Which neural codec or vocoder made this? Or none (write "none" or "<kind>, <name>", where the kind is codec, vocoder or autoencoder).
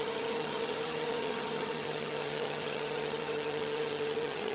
vocoder, HiFi-GAN